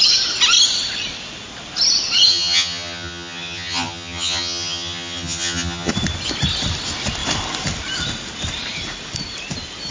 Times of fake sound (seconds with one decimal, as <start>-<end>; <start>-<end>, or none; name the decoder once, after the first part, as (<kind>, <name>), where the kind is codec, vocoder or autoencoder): 2.3-5.9 (vocoder, HiFi-GAN)